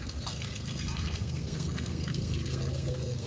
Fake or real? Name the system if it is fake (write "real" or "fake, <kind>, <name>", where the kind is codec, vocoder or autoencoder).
fake, codec, SNAC